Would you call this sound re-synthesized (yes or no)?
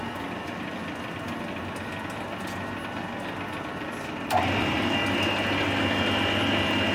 no